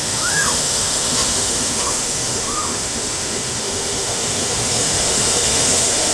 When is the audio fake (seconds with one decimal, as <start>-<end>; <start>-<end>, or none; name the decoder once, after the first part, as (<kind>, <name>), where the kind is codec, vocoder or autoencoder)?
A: 0.0-6.1 (autoencoder, DAC-VAE)